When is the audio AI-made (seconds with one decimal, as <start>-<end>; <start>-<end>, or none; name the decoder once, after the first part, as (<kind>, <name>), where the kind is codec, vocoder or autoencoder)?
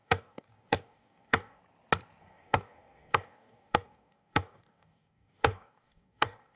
0.0-1.6 (codec, DAC); 2.2-6.6